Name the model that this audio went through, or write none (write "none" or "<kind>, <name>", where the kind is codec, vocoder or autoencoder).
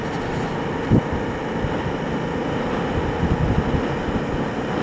none